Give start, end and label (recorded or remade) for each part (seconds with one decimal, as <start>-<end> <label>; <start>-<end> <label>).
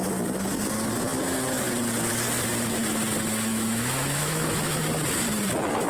0.0-3.5 recorded; 3.5-4.8 remade; 4.8-5.9 recorded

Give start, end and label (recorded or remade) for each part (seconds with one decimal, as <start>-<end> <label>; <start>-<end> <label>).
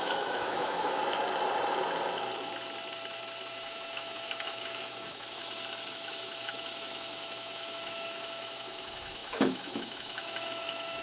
0.0-1.0 remade; 1.0-3.5 recorded; 3.5-5.4 remade; 5.4-5.9 recorded; 5.9-11.0 remade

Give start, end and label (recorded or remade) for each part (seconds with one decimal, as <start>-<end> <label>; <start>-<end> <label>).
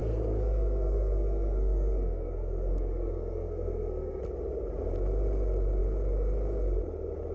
0.0-4.2 remade; 4.2-7.3 recorded